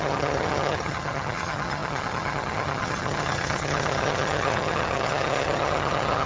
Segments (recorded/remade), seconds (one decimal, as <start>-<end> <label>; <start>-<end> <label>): 0.0-6.3 remade